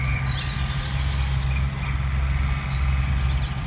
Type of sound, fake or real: real